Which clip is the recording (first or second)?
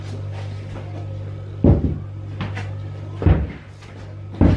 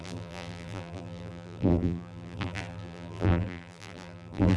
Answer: first